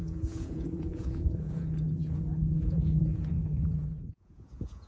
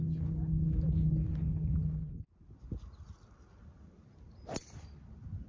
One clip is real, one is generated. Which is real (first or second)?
second